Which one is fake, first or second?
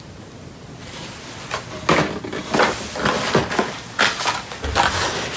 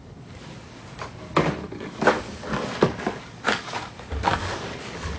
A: second